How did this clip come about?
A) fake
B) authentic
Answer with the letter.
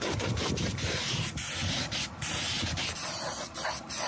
B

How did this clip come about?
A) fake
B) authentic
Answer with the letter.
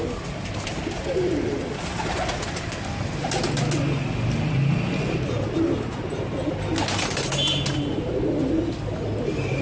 B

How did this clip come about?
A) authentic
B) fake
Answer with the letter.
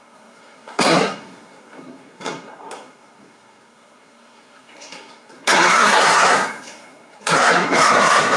B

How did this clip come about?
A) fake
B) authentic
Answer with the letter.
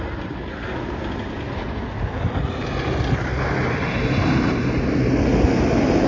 B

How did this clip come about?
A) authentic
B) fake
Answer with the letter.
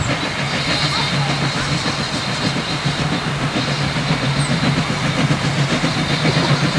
A